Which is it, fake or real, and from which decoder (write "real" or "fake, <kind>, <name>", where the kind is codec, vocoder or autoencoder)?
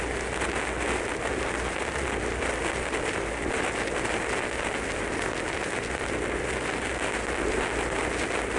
real